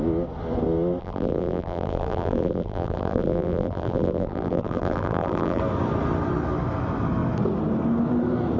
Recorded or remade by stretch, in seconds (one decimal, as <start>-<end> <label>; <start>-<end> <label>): 0.0-1.0 recorded; 1.0-5.6 remade; 5.6-8.6 recorded